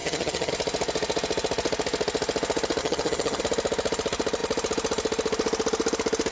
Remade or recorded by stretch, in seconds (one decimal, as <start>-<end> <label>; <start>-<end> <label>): 0.0-0.5 remade; 0.5-2.8 recorded; 2.8-3.4 remade; 3.4-6.3 recorded